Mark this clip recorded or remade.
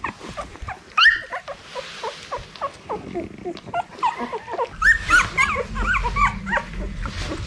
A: recorded